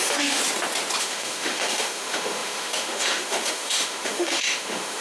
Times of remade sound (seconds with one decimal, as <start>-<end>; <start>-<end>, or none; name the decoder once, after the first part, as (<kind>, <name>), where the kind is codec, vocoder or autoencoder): 0.0-0.4 (autoencoder, DAC-VAE); 1.0-5.0